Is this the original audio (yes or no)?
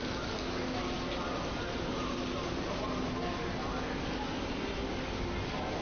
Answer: yes